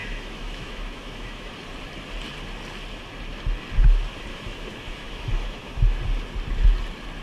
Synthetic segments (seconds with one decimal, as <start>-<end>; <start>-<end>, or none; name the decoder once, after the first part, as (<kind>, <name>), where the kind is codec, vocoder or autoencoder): 0.0-1.5 (autoencoder, DAC-VAE); 4.3-6.0